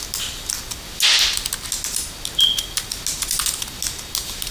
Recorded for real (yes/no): yes